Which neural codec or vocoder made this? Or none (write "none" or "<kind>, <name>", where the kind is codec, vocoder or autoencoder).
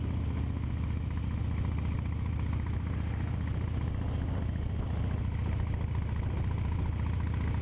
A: none